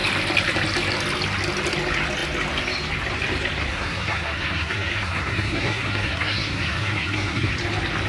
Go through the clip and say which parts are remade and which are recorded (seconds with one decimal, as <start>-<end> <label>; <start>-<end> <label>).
0.0-3.7 recorded; 3.7-7.5 remade; 7.5-8.1 recorded